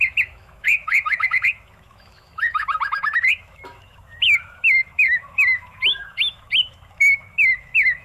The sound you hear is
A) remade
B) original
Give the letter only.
A